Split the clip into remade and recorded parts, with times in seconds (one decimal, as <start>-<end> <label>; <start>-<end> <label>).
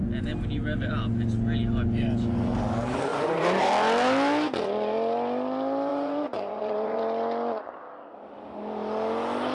0.0-3.1 recorded; 3.1-3.7 remade; 3.7-5.9 recorded; 5.9-7.0 remade; 7.0-9.5 recorded